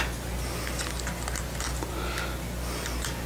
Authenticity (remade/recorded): recorded